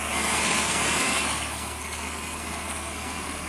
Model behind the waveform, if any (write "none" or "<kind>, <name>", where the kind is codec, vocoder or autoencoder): codec, SNAC